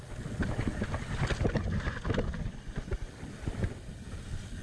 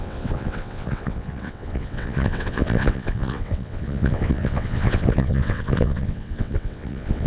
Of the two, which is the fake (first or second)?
second